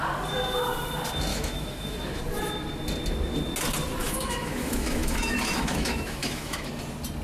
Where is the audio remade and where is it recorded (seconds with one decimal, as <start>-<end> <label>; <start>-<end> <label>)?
0.0-1.3 recorded; 1.3-2.2 remade; 2.2-4.0 recorded; 4.0-6.7 remade; 6.7-7.2 recorded